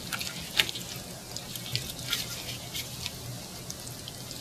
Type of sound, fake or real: real